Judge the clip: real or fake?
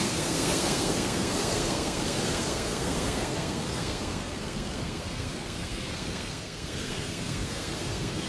fake